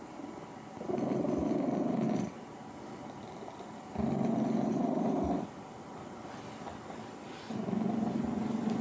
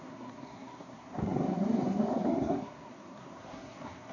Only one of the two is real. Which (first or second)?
first